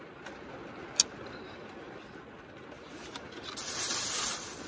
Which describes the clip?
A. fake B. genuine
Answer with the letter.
B